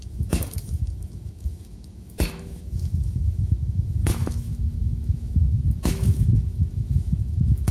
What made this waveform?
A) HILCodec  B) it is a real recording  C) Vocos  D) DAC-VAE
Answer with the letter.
D